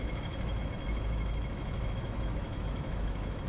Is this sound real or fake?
fake